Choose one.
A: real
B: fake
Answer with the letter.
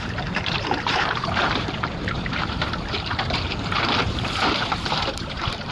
B